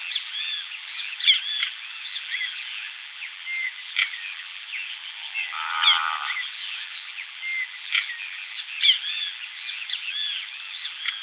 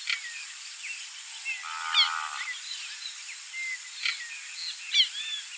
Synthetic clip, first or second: first